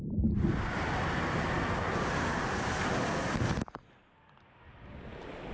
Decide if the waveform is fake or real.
real